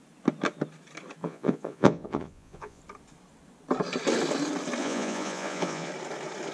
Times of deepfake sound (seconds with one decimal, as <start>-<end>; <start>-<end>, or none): 1.2-2.8; 4.8-5.9